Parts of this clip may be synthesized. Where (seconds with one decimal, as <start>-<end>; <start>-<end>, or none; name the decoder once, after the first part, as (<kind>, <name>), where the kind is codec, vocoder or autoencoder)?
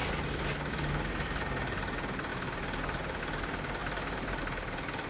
none